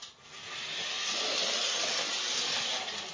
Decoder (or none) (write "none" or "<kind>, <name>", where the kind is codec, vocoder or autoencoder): none